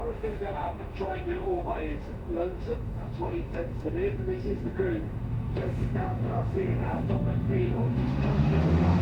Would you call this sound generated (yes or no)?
yes